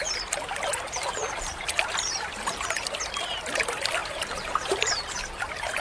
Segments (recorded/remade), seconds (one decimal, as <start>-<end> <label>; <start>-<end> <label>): 0.0-1.2 recorded; 1.2-2.3 remade; 2.3-4.0 recorded; 4.0-4.9 remade; 4.9-5.8 recorded